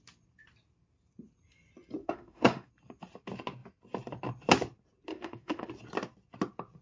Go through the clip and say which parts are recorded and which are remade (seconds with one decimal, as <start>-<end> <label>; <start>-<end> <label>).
0.0-2.0 recorded; 2.0-2.7 remade; 2.7-5.1 recorded; 5.1-5.7 remade; 5.7-6.8 recorded